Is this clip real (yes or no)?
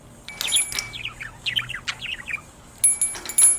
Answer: yes